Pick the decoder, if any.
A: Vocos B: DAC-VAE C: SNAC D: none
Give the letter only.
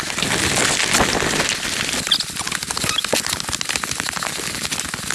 D